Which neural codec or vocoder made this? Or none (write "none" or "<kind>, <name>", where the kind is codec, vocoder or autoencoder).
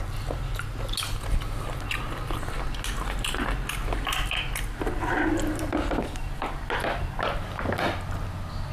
none